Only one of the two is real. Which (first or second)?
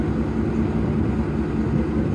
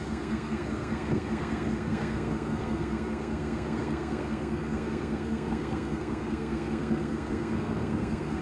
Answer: first